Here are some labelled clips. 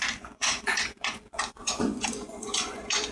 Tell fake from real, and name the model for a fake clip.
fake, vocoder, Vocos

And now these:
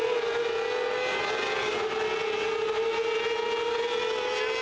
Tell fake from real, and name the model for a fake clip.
real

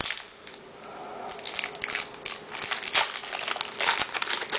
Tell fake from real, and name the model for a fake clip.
real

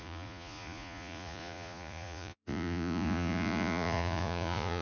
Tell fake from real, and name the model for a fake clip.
fake, vocoder, Vocos